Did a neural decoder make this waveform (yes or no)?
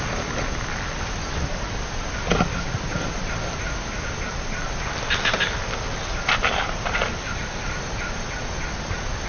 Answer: no